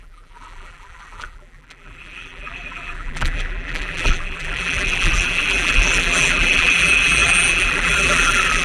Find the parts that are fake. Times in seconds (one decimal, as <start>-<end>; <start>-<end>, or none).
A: 0.0-8.6